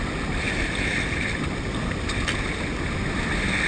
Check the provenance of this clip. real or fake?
real